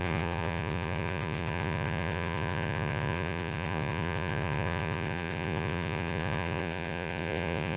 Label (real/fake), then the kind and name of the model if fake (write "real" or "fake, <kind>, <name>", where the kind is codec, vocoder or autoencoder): fake, vocoder, Vocos